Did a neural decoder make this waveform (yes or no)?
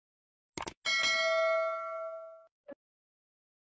no